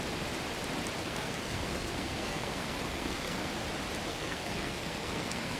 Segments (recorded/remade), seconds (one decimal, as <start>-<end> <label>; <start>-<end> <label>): 0.0-1.0 recorded; 1.0-3.5 remade; 3.5-4.1 recorded; 4.1-5.6 remade